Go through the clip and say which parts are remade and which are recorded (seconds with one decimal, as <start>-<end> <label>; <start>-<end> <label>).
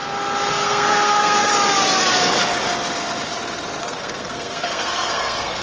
0.0-0.5 recorded; 0.5-1.5 remade; 1.5-3.8 recorded; 3.8-5.6 remade